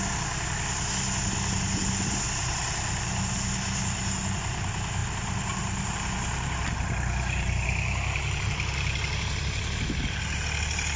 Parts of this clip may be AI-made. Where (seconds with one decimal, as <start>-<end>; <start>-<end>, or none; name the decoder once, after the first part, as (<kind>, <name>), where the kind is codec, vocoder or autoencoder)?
none